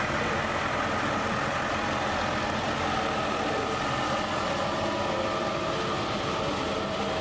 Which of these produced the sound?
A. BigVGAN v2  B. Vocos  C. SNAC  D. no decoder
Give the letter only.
D